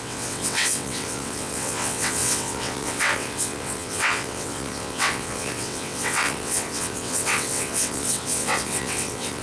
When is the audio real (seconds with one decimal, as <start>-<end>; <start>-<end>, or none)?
none